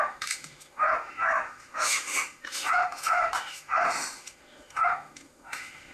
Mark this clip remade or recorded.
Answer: remade